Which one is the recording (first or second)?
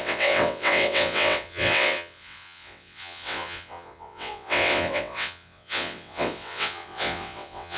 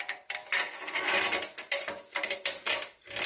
second